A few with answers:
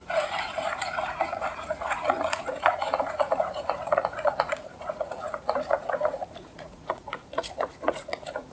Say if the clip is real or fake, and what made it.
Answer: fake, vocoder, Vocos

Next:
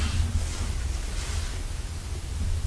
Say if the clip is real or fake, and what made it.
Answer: real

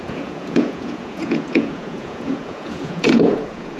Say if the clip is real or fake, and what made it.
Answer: fake, vocoder, Vocos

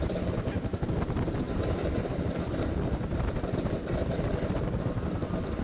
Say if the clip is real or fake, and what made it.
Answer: real